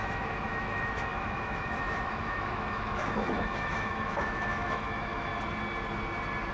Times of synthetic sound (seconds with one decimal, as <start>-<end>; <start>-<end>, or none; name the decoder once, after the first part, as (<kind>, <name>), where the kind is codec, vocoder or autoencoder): 0.0-5.3 (autoencoder, DAC-VAE)